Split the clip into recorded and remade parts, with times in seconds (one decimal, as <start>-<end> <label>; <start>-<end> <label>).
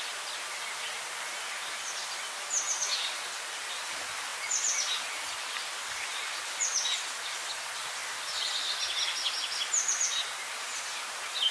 0.0-11.5 recorded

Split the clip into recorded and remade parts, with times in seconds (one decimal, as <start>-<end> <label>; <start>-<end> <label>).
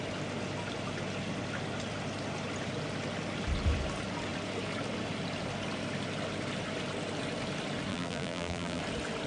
0.0-7.9 recorded; 7.9-8.8 remade; 8.8-9.3 recorded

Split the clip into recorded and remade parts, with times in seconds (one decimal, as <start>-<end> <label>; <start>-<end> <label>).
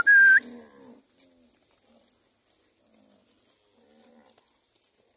0.0-5.2 recorded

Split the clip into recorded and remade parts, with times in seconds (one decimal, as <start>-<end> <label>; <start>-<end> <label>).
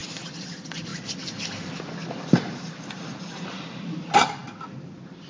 0.0-5.3 recorded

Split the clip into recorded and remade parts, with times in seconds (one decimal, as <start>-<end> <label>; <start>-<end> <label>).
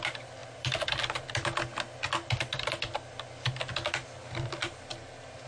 0.0-5.5 recorded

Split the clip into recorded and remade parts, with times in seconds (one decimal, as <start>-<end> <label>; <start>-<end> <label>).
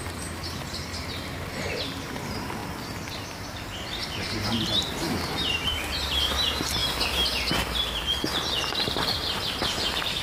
0.0-2.6 remade; 2.6-3.3 recorded; 3.3-6.8 remade; 6.8-8.9 recorded; 8.9-10.2 remade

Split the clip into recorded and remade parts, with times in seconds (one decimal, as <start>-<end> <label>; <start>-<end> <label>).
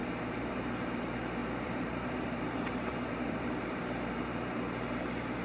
0.0-0.5 remade; 0.5-1.4 recorded; 1.4-3.8 remade; 3.8-5.4 recorded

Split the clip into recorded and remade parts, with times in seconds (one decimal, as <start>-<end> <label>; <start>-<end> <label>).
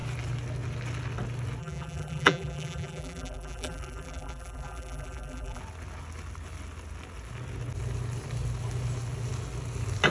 0.0-1.6 recorded; 1.6-5.6 remade; 5.6-10.1 recorded